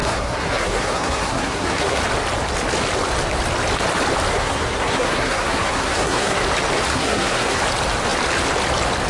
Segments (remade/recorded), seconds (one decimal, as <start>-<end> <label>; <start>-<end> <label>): 0.0-2.0 remade; 2.0-4.3 recorded; 4.3-6.4 remade; 6.4-6.9 recorded; 6.9-7.6 remade; 7.6-9.1 recorded